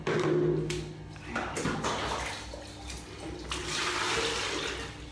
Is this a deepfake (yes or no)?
no